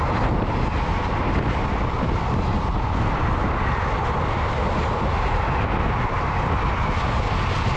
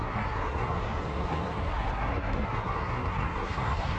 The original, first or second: first